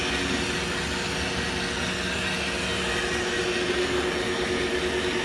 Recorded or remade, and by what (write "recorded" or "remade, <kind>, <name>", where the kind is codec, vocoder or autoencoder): recorded